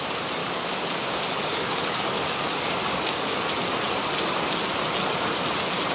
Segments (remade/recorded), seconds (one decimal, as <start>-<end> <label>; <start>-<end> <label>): 0.0-0.4 recorded; 0.4-3.3 remade; 3.3-5.9 recorded